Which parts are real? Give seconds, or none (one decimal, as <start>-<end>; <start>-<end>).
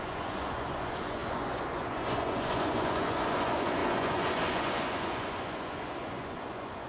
none